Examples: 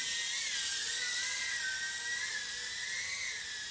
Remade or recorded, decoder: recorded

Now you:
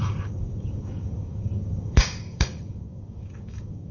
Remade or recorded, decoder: remade, codec, DAC